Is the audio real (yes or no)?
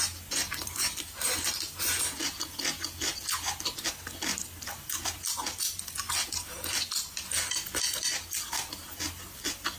yes